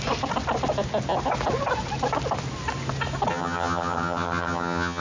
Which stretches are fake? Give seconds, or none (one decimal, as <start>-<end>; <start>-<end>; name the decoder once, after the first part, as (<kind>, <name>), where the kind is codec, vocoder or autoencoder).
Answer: 3.3-5.0 (vocoder, HiFi-GAN)

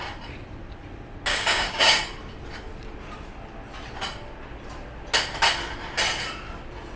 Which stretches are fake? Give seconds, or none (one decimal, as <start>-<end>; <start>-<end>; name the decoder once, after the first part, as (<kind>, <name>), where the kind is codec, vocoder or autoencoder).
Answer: 1.3-2.0 (codec, DAC)